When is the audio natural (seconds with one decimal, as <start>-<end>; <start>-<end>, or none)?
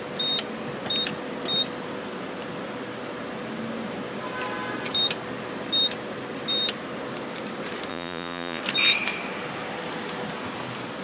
0.0-7.9; 8.6-11.0